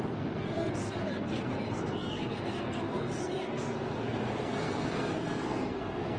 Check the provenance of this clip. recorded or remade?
remade